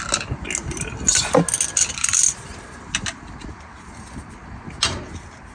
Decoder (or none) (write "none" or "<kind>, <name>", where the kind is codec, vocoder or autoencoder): none